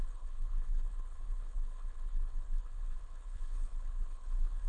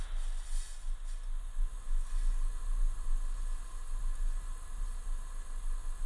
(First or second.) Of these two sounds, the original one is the second